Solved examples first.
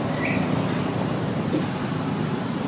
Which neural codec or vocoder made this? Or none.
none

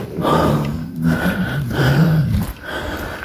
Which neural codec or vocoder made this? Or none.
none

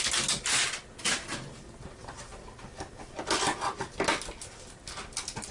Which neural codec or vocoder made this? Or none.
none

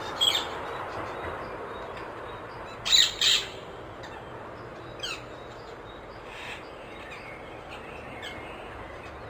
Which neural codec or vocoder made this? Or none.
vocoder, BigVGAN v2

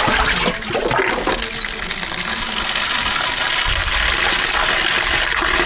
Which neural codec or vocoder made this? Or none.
none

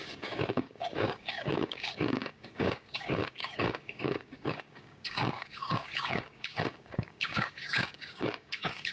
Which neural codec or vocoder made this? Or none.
codec, DAC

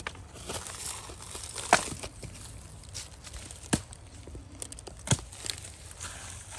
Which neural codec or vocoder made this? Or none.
none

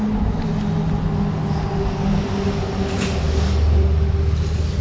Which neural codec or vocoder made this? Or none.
none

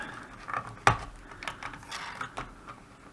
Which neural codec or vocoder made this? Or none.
none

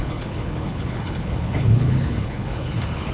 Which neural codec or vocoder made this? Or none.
codec, HILCodec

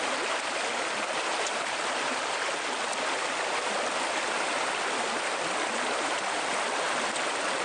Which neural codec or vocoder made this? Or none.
none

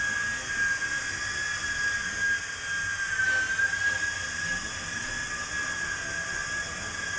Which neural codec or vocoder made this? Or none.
none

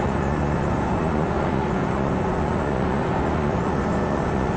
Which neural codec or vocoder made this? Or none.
vocoder, Vocos